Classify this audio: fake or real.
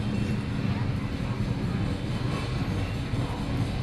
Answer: real